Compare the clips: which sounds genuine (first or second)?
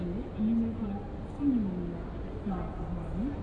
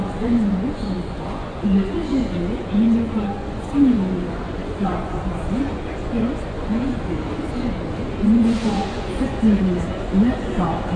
first